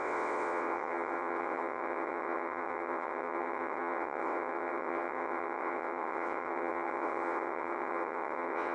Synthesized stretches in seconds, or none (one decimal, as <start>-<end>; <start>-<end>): 0.0-8.7